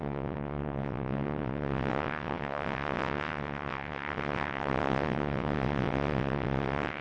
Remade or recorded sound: remade